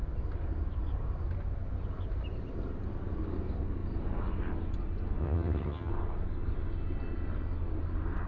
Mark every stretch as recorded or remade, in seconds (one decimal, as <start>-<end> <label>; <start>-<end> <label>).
0.0-5.2 recorded; 5.2-5.9 remade; 5.9-8.3 recorded